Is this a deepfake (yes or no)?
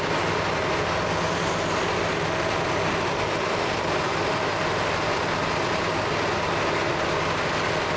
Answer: no